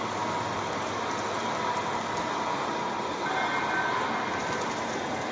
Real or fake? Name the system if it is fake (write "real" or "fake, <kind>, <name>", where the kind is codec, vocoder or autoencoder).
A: real